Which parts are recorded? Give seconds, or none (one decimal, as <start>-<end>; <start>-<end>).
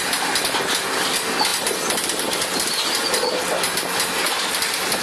0.0-5.0